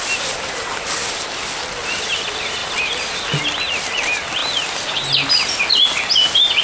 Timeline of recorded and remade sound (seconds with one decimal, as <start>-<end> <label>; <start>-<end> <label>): 0.0-6.6 recorded